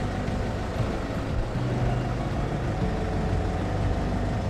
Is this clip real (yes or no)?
yes